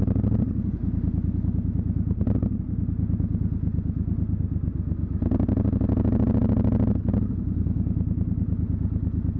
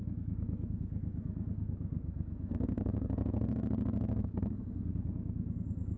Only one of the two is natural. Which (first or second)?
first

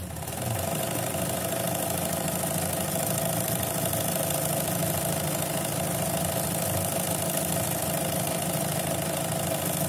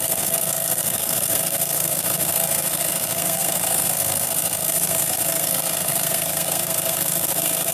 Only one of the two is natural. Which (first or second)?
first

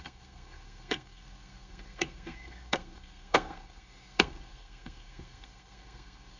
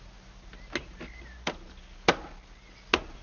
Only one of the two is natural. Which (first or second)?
second